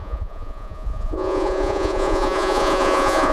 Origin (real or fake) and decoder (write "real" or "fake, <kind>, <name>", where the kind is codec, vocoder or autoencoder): fake, vocoder, Vocos